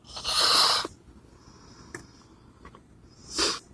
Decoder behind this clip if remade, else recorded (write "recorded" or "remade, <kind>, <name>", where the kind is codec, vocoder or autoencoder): recorded